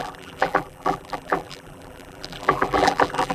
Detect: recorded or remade remade